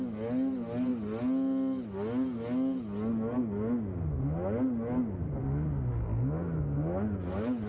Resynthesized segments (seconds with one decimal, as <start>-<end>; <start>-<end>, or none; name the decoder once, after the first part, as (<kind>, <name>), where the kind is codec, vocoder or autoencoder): none

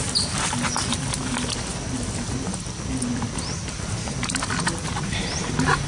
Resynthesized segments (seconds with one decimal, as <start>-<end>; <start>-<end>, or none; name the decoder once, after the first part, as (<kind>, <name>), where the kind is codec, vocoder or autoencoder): 3.5-5.9 (vocoder, BigVGAN v2)

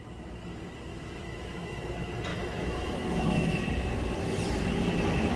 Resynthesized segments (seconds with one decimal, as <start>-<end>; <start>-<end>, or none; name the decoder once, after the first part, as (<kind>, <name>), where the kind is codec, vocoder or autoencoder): 0.9-1.8 (autoencoder, DAC-VAE); 2.3-3.6

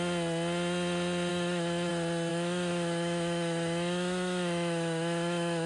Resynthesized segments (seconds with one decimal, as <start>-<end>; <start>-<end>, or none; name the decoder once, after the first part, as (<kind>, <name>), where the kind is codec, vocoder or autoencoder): 1.3-1.9 (autoencoder, DAC-VAE); 2.3-5.7

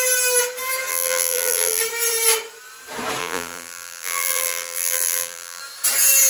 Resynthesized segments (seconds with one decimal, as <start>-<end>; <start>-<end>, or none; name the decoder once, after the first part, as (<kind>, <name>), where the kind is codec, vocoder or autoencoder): 0.9-1.8 (vocoder, BigVGAN v2); 3.2-5.6

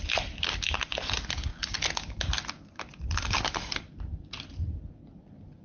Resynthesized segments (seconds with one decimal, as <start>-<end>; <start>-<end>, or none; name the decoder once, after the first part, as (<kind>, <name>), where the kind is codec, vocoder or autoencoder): none

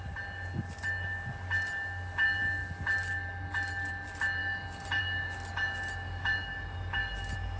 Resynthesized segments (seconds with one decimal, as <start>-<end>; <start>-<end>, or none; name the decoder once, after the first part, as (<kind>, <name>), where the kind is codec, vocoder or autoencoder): none